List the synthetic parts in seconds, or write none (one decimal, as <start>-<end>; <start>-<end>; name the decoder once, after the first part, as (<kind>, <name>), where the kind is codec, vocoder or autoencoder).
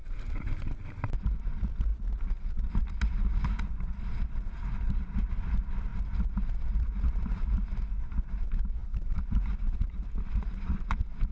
8.8-10.2 (vocoder, BigVGAN v2)